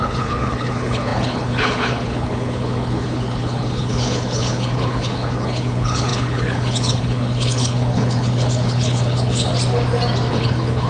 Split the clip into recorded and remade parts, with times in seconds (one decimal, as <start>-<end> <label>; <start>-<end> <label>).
0.0-9.5 remade; 9.5-10.3 recorded; 10.3-10.9 remade